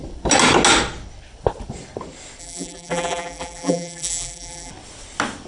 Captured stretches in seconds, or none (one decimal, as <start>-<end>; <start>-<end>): 0.0-2.4; 4.7-5.5